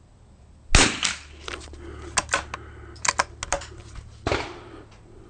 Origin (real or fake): real